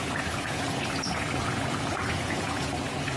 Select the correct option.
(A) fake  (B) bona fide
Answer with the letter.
A